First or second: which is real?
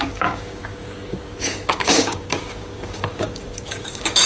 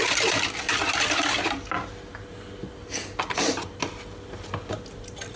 second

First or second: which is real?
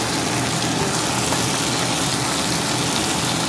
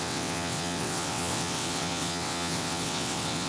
first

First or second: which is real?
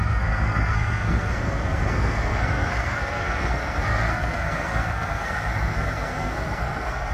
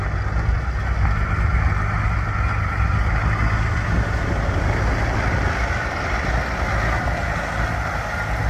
second